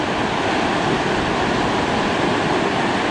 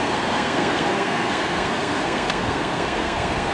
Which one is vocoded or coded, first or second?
second